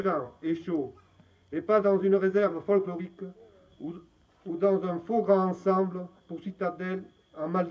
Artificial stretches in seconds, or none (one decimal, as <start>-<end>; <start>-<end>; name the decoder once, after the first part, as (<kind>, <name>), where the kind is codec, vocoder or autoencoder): 0.0-3.0 (vocoder, Vocos); 3.7-4.5; 5.6-6.2